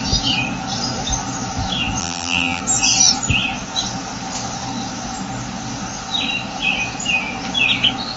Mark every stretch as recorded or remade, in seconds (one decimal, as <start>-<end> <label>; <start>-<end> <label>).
0.0-2.0 recorded; 2.0-2.6 remade; 2.6-8.2 recorded

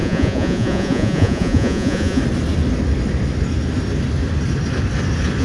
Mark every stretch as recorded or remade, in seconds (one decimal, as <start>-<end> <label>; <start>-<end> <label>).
0.0-2.2 remade; 2.2-5.4 recorded